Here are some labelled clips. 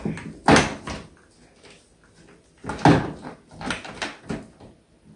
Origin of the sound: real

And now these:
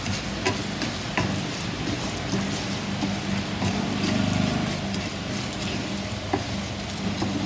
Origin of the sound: real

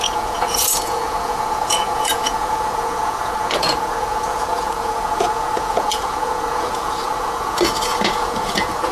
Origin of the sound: fake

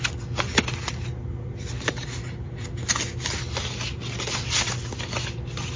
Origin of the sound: real